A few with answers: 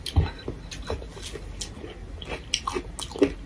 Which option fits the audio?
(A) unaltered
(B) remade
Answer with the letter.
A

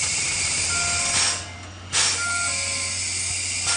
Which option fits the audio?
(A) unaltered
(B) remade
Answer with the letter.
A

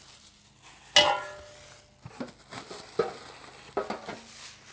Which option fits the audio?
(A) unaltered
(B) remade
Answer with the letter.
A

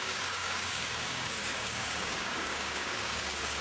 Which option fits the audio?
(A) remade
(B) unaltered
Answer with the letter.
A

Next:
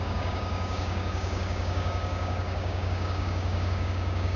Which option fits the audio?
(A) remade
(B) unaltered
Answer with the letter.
A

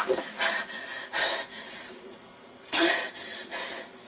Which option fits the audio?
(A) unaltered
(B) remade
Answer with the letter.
B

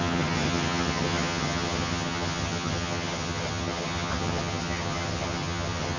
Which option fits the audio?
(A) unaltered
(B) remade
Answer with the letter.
B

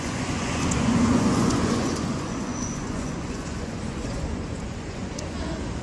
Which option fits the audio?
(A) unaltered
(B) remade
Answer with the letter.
B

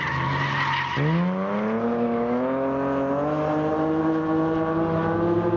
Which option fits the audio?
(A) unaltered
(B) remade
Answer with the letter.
A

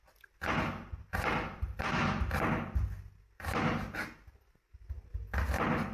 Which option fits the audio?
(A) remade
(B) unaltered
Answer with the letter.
B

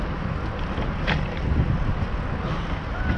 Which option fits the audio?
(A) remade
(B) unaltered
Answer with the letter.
B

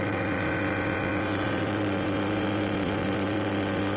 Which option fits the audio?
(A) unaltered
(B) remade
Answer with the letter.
B